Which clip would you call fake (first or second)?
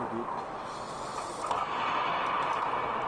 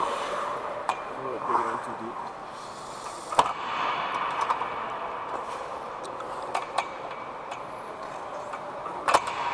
second